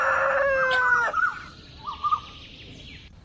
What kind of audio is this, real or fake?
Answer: real